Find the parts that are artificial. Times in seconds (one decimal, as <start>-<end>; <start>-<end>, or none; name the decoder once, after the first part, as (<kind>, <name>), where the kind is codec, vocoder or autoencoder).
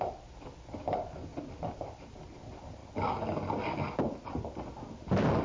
0.0-2.8 (vocoder, BigVGAN v2); 5.0-5.4